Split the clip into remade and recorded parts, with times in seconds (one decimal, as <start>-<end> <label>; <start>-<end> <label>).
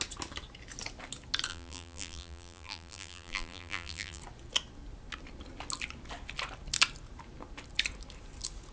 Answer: 0.0-1.5 recorded; 1.5-4.2 remade; 4.2-8.7 recorded